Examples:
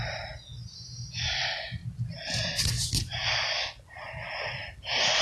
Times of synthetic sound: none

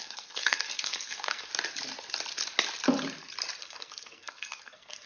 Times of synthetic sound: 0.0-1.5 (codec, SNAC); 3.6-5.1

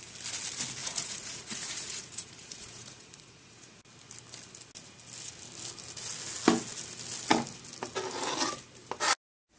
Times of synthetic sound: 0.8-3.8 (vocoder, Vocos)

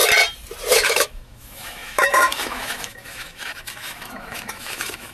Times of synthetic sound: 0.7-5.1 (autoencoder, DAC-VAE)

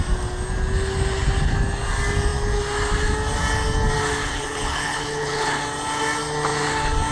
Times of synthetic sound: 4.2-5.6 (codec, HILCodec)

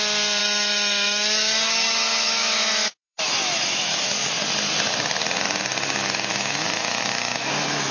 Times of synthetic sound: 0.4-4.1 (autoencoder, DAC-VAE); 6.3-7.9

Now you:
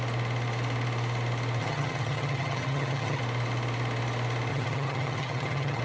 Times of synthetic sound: 1.6-3.2 (vocoder, HiFi-GAN); 4.5-5.8